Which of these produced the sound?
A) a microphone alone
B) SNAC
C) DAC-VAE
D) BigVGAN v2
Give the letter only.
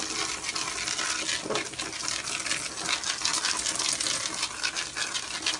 A